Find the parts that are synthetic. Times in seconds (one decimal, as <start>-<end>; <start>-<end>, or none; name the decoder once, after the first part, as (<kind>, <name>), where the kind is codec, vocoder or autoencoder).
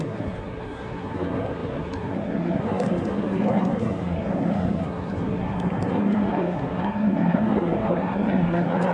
0.0-8.9 (codec, SNAC)